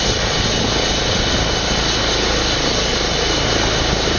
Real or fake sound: real